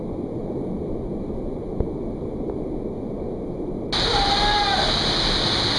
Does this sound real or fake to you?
real